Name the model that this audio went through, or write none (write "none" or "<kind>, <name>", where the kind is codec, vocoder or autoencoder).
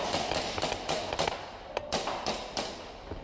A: none